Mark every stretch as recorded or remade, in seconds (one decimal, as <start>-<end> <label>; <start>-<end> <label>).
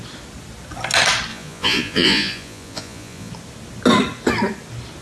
0.0-1.3 recorded; 1.3-3.3 remade; 3.3-5.0 recorded